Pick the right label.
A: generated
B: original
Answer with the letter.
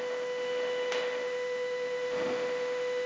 A